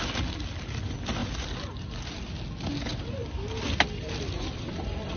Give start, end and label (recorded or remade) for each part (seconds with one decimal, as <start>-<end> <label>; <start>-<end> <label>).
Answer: 0.0-5.2 recorded